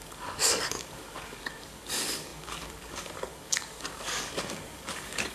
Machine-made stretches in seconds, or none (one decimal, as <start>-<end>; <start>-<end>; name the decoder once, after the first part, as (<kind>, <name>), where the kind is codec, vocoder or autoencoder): 0.0-5.3 (codec, DAC)